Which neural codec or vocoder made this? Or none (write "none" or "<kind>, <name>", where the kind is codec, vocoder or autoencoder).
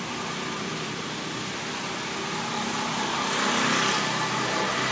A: none